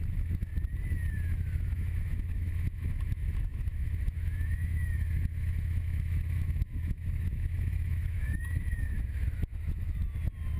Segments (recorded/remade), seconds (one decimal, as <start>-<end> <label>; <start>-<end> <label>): 0.0-0.5 remade; 0.5-1.1 recorded; 1.1-10.0 remade; 10.0-10.6 recorded